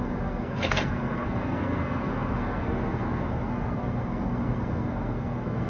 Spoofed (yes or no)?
yes